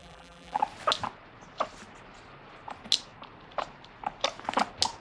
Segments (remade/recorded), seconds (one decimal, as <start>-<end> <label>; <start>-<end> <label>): 0.0-0.6 remade; 0.6-5.0 recorded